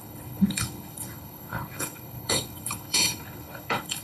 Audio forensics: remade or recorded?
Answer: remade